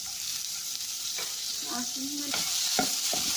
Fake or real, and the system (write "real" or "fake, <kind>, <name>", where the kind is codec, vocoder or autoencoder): fake, vocoder, BigVGAN v2